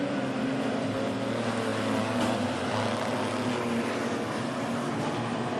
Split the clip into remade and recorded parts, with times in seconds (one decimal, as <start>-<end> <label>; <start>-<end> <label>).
0.0-5.6 recorded